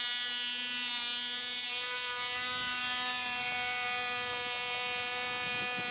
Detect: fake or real real